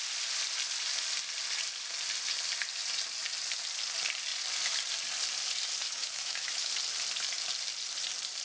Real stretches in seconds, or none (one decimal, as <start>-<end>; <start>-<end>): 0.0-5.8; 6.7-8.4